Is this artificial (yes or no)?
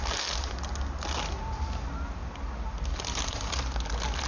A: no